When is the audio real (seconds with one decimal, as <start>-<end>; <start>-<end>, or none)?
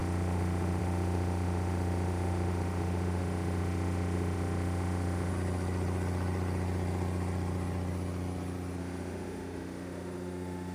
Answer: 5.3-8.8